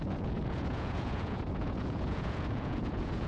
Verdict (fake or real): fake